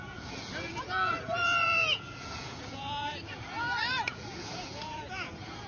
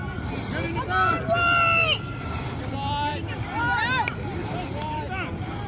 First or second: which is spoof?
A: first